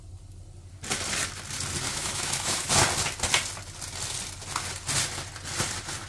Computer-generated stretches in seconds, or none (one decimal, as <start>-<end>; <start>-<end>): 1.9-2.7